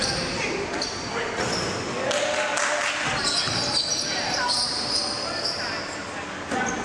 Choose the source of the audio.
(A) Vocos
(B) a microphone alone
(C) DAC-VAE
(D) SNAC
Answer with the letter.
B